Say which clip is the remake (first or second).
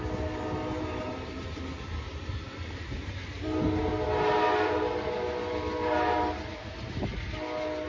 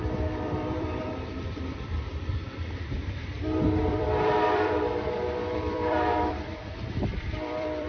second